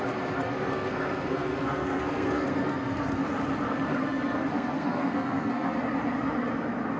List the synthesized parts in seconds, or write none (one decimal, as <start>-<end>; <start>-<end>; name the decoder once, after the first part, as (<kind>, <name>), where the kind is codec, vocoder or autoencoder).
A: 0.4-3.2 (codec, SNAC); 3.9-5.8